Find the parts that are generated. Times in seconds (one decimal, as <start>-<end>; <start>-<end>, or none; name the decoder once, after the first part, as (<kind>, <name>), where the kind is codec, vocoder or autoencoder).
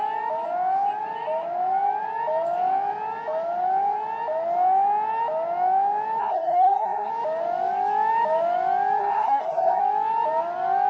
6.2-7.1 (codec, SNAC); 9.0-9.8